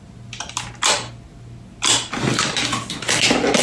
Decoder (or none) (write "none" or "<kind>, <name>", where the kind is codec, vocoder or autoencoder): none